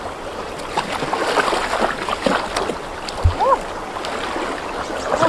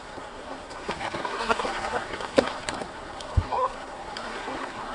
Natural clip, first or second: first